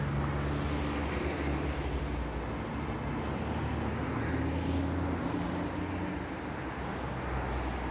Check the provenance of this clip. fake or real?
real